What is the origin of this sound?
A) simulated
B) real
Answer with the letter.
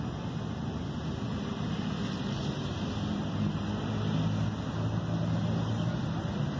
B